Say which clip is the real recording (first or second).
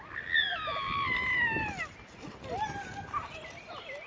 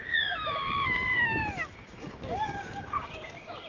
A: first